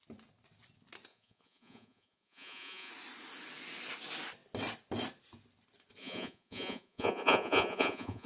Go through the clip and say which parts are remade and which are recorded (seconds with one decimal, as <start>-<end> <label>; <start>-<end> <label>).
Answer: 0.0-1.1 recorded; 1.1-2.9 remade; 2.9-6.0 recorded; 6.0-8.3 remade